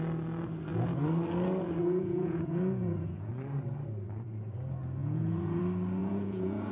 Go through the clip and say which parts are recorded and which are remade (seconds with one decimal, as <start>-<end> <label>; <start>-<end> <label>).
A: 0.0-1.8 recorded; 1.8-3.3 remade; 3.3-5.0 recorded; 5.0-5.6 remade; 5.6-6.0 recorded; 6.0-6.7 remade